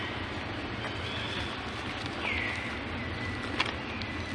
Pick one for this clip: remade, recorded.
recorded